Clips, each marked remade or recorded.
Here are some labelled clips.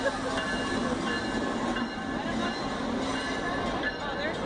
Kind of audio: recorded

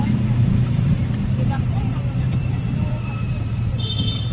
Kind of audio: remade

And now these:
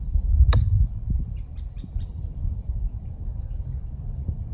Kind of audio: remade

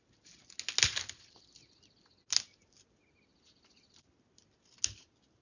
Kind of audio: recorded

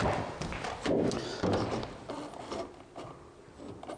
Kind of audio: recorded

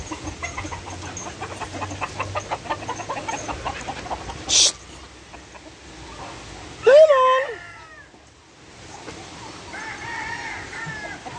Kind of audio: recorded